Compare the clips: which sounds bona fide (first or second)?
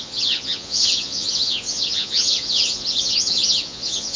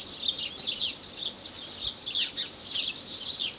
second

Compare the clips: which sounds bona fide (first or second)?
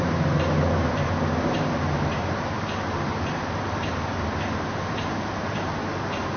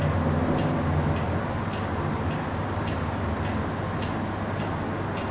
second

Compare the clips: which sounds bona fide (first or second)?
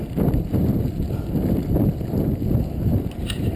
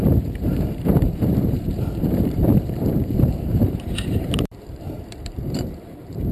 first